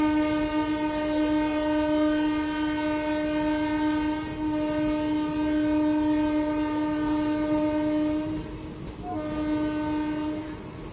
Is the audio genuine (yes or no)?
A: yes